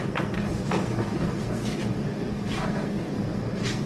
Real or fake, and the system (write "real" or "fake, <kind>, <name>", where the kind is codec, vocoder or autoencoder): fake, codec, SNAC